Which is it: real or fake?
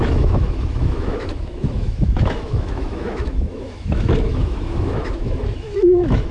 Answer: fake